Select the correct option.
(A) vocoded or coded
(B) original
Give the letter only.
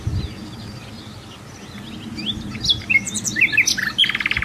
B